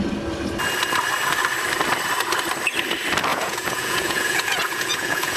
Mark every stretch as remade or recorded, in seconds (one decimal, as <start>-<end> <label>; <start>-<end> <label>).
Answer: 0.0-3.3 recorded; 3.3-5.4 remade